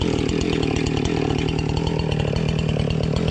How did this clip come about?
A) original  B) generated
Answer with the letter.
A